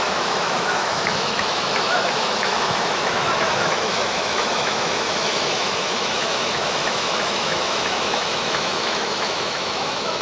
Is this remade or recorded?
remade